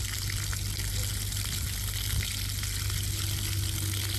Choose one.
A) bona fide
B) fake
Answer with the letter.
A